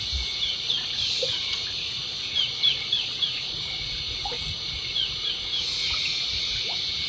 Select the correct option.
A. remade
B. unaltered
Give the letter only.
A